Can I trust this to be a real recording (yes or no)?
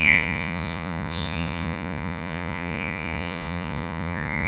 no